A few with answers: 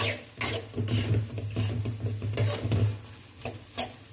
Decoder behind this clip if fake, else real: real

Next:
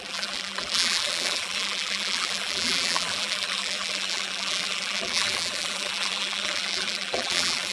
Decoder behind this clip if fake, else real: fake, vocoder, BigVGAN v2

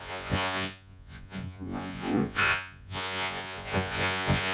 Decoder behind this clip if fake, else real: fake, vocoder, Vocos